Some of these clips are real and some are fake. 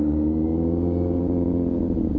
real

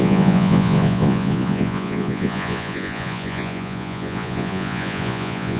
fake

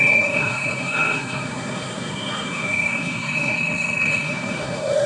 fake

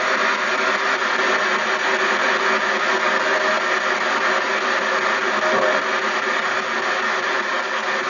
real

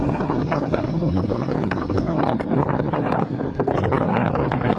fake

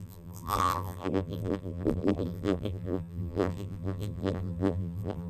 fake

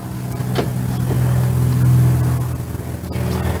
real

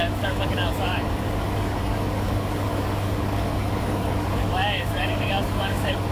fake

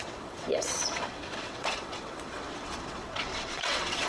fake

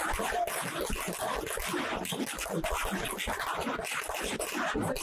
real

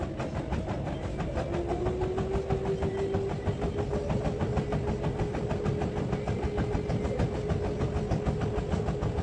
real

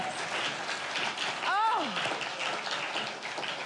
real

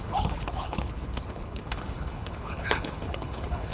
fake